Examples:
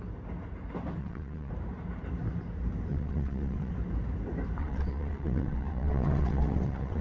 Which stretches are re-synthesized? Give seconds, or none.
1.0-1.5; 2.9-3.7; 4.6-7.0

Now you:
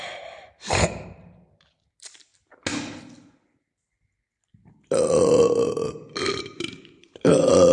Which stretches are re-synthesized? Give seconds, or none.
0.0-2.3; 6.3-7.7